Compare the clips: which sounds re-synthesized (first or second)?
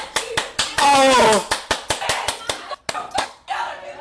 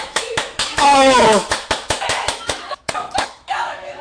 second